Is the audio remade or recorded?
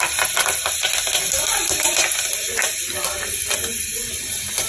recorded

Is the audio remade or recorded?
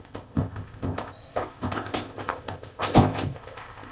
remade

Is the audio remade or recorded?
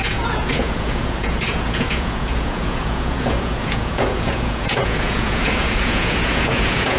remade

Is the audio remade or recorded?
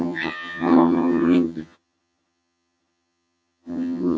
remade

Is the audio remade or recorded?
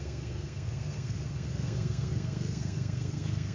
remade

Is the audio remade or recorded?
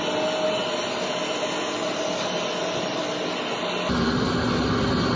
recorded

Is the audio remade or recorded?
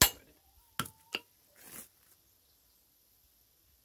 recorded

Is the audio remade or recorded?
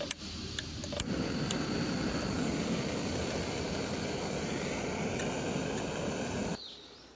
recorded